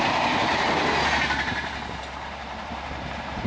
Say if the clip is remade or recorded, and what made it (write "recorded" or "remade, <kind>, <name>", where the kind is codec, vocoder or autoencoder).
remade, vocoder, BigVGAN v2